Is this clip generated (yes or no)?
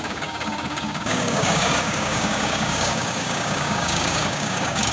yes